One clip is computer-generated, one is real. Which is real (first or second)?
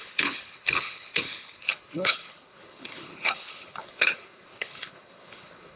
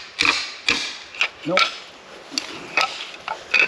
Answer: second